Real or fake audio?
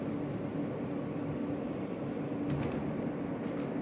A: real